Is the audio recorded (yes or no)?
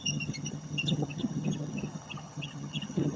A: no